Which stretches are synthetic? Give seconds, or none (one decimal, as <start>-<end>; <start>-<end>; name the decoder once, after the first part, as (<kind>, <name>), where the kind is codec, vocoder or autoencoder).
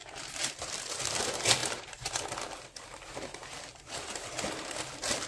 0.0-1.0 (vocoder, BigVGAN v2); 1.6-2.1; 3.7-4.3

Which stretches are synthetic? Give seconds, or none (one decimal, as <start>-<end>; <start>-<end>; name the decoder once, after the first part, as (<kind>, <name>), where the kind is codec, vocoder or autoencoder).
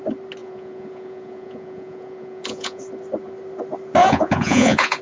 0.4-2.8 (vocoder, Vocos); 4.0-5.0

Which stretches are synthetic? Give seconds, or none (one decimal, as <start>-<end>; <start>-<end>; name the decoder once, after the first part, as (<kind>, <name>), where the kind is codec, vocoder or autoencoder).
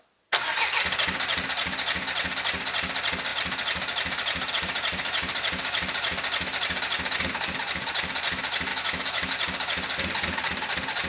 8.7-9.3 (autoencoder, DAC-VAE)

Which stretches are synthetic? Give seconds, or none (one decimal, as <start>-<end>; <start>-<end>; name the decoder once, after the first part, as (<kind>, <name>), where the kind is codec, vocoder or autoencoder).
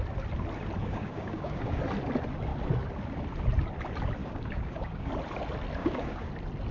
0.8-1.8 (codec, DAC); 4.2-5.1; 5.8-6.3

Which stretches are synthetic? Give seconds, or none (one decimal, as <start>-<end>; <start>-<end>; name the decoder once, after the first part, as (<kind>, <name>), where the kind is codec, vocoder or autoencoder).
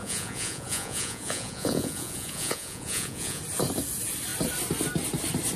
0.0-3.4 (vocoder, Vocos)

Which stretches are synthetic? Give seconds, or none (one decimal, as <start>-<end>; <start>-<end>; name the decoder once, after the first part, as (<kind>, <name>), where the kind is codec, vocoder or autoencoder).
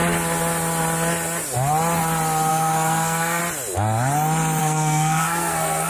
2.5-3.4 (codec, SNAC); 4.6-5.9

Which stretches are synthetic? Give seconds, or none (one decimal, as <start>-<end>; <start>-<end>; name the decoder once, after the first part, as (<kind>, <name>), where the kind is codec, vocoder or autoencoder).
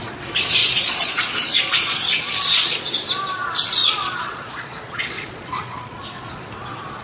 0.6-3.0 (vocoder, Vocos); 3.8-6.3